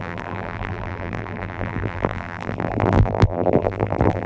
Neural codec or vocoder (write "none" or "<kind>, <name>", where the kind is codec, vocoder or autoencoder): vocoder, BigVGAN v2